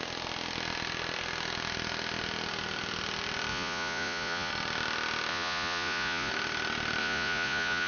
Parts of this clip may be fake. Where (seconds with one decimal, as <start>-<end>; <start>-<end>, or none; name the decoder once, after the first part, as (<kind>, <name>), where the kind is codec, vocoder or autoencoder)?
3.5-4.5 (vocoder, Vocos); 5.3-6.3; 7.0-7.9